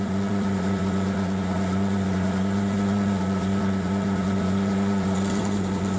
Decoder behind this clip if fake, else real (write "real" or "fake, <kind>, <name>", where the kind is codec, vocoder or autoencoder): fake, vocoder, Vocos